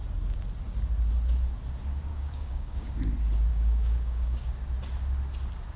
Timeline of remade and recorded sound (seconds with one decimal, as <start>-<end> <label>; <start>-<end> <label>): 0.0-2.1 recorded; 2.1-2.9 remade; 2.9-3.5 recorded; 3.5-4.5 remade; 4.5-5.8 recorded